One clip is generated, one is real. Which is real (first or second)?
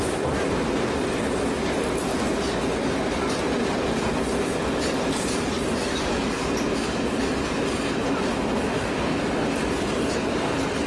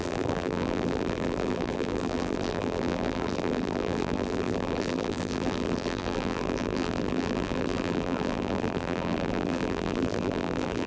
first